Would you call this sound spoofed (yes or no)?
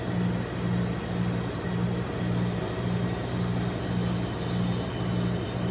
no